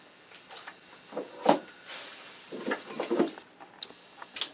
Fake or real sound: real